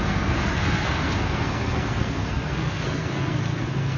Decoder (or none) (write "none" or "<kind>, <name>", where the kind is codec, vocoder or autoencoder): codec, SNAC